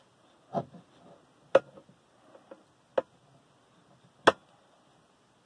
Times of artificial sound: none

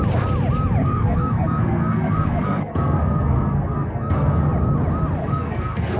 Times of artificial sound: 0.8-4.4; 5.2-6.0

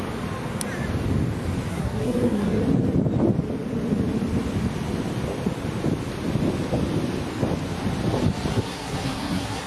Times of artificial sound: 1.7-2.6; 8.5-9.7